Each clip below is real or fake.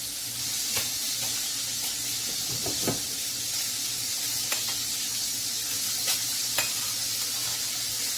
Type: real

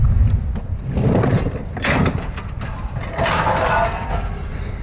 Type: real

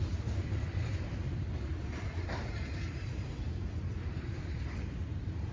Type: fake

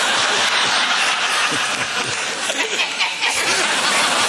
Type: real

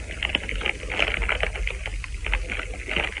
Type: real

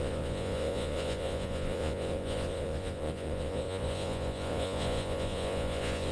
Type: fake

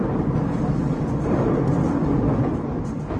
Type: real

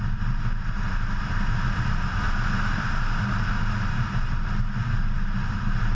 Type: real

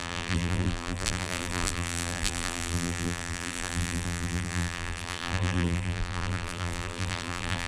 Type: fake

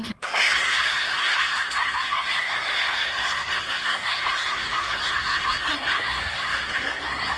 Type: fake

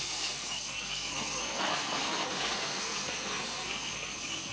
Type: fake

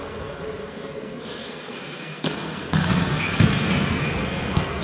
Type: fake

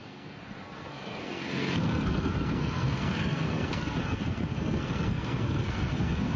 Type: fake